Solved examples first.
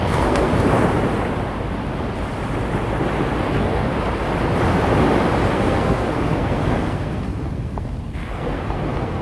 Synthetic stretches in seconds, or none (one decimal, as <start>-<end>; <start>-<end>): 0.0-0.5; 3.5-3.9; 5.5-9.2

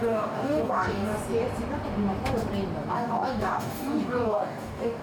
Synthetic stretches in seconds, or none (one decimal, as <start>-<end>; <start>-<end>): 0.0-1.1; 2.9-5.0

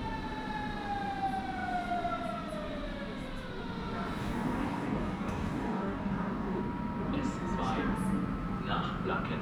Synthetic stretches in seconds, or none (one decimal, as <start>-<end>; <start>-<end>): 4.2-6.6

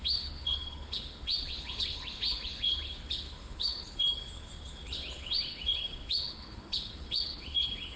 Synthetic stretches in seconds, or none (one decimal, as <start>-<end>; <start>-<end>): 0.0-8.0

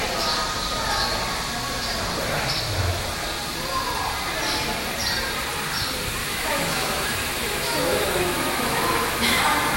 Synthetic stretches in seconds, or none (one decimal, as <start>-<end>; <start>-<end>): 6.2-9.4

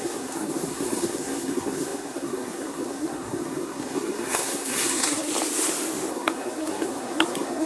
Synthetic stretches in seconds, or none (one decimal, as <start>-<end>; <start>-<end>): 0.0-5.3; 6.1-7.7

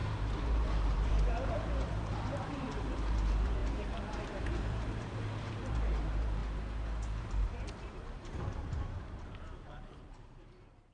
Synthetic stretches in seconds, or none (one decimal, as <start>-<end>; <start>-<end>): 0.0-6.4; 7.2-10.9